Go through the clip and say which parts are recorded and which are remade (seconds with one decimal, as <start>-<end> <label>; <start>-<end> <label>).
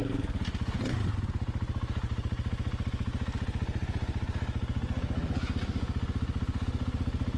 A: 0.0-7.4 recorded